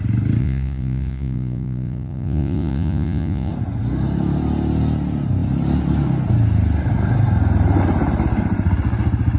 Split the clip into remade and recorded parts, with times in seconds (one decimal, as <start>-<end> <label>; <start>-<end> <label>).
0.0-0.4 recorded; 0.4-3.5 remade; 3.5-9.4 recorded

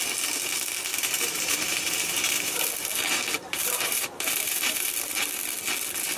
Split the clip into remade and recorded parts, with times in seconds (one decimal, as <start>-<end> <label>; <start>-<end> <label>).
0.0-0.9 recorded; 0.9-2.7 remade; 2.7-3.6 recorded; 3.6-4.9 remade; 4.9-6.2 recorded

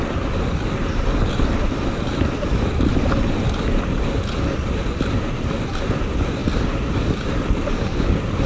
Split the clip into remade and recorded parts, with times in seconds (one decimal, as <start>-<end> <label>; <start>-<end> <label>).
0.0-8.5 recorded